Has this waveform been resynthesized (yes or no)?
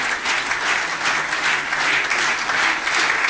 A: no